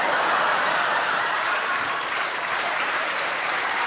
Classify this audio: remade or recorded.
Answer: remade